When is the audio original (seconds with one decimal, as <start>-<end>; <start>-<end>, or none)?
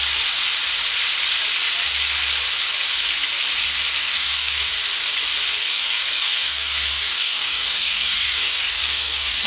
0.0-4.0; 4.7-5.6